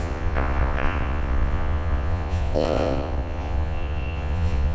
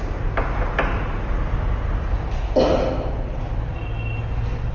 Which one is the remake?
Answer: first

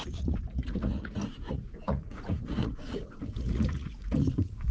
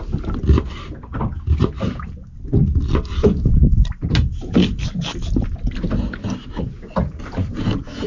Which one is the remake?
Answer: first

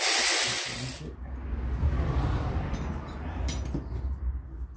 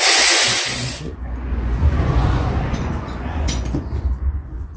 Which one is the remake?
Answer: second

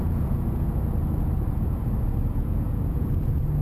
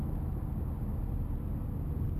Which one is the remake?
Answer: first